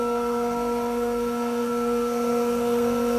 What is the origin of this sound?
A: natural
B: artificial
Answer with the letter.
B